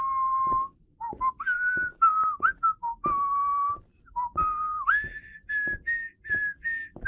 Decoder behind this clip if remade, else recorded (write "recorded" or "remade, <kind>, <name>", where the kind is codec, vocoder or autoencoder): recorded